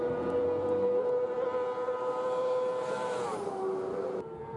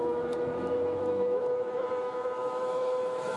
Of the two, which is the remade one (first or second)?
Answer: second